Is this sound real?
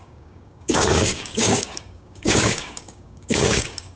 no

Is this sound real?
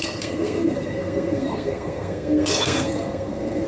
no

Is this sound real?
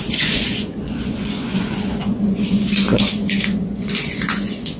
no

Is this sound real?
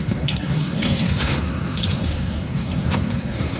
no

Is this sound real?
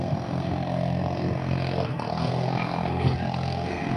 no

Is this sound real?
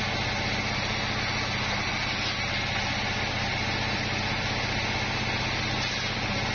yes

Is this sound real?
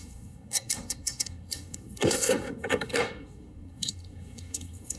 no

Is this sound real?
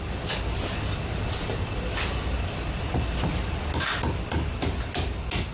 yes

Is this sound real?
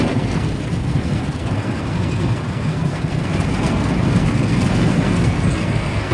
no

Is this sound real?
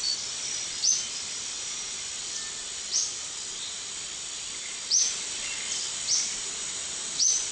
yes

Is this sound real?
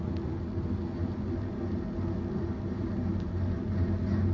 yes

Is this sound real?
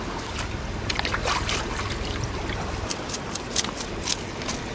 yes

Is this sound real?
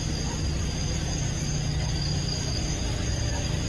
yes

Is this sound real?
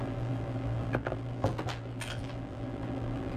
no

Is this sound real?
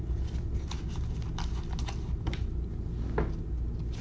yes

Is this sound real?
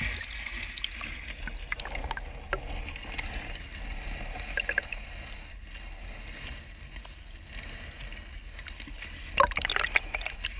yes